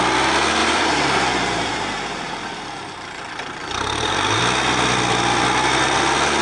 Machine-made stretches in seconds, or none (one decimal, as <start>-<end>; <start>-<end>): 0.6-4.4